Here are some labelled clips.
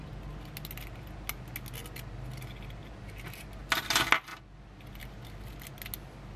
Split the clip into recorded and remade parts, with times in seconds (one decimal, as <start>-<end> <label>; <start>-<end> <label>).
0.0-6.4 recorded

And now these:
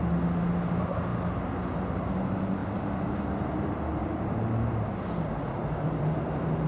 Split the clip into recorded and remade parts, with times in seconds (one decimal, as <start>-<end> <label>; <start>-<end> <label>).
0.0-2.6 recorded; 2.6-3.2 remade; 3.2-4.0 recorded; 4.0-5.0 remade; 5.0-6.7 recorded

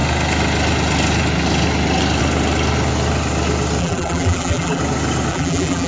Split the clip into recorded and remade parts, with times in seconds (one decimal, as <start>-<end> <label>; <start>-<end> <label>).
0.0-3.8 recorded; 3.8-4.8 remade; 4.8-5.3 recorded; 5.3-5.9 remade